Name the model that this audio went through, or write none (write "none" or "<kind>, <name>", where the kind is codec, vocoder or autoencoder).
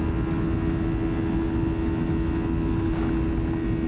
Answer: none